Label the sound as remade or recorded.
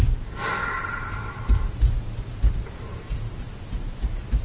recorded